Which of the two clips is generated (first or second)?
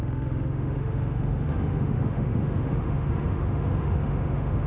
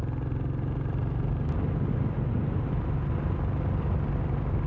first